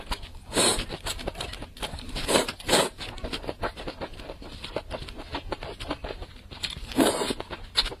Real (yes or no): yes